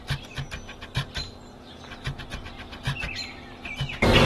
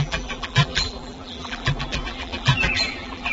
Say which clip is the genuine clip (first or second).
first